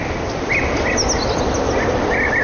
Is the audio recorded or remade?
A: recorded